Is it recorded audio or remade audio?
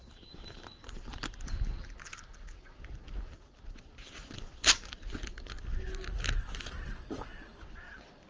recorded